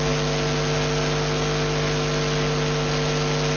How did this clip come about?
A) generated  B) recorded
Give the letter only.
B